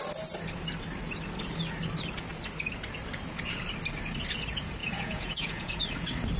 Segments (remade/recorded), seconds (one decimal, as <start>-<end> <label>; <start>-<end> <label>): 0.0-4.8 recorded; 4.8-5.8 remade; 5.8-6.4 recorded